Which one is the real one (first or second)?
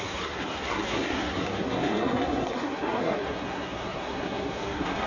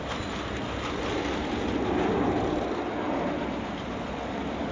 second